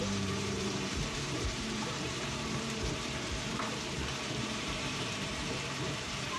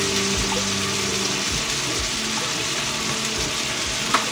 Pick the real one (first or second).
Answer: second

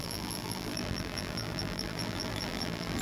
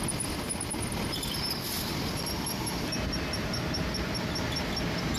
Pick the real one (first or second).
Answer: second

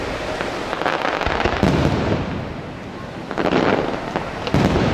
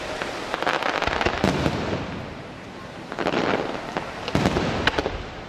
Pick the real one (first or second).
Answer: first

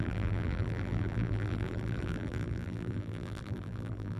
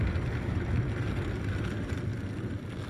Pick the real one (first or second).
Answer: second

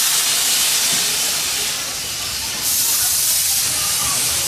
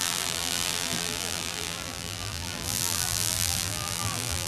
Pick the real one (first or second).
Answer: first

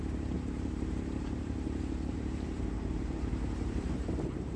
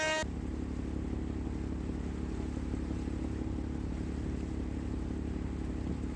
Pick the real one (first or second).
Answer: second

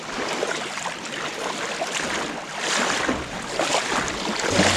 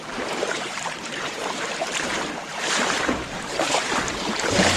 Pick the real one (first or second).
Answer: first